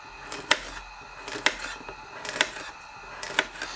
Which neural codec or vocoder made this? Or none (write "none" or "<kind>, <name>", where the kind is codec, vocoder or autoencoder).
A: none